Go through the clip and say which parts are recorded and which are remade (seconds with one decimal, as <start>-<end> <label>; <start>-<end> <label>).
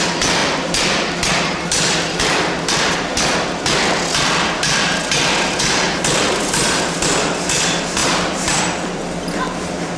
0.0-8.0 recorded; 8.0-8.6 remade; 8.6-10.0 recorded